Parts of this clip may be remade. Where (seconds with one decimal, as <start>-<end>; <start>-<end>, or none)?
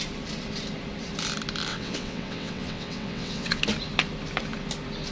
1.7-3.6